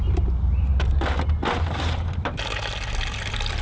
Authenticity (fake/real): real